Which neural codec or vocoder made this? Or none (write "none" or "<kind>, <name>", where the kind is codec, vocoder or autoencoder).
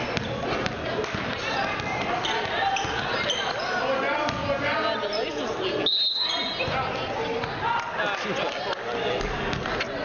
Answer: none